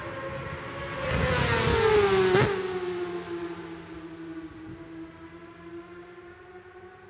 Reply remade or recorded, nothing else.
recorded